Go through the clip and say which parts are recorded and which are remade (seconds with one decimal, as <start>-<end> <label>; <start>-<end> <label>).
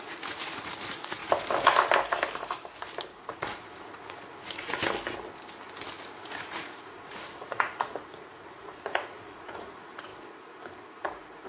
0.0-1.2 remade; 1.2-3.3 recorded; 3.3-4.8 remade; 4.8-6.1 recorded; 6.1-11.5 remade